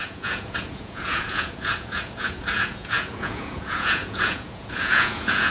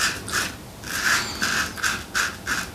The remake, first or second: first